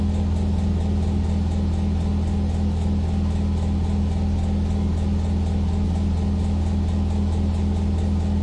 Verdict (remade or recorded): recorded